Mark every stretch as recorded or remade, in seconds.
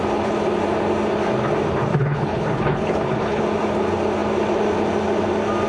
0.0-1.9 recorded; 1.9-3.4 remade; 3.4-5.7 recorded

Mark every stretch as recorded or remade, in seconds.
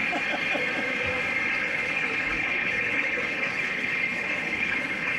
0.0-1.6 recorded; 1.6-5.2 remade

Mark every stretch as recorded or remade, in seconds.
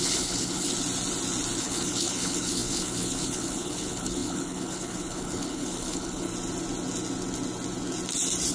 0.0-0.7 remade; 0.7-1.6 recorded; 1.6-6.3 remade; 6.3-8.5 recorded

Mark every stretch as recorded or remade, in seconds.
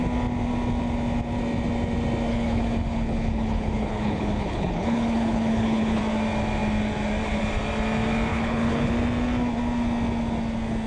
0.0-2.3 recorded; 2.3-6.0 remade; 6.0-8.3 recorded; 8.3-8.9 remade; 8.9-10.9 recorded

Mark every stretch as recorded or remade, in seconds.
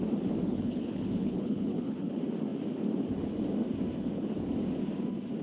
0.0-0.5 recorded; 0.5-2.1 remade; 2.1-5.4 recorded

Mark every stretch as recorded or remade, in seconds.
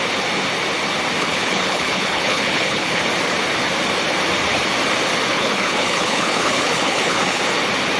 0.0-1.2 recorded; 1.2-3.0 remade; 3.0-5.3 recorded; 5.3-7.4 remade; 7.4-8.0 recorded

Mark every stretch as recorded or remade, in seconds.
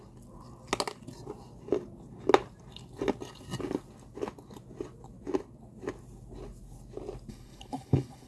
0.0-7.3 recorded; 7.3-8.3 remade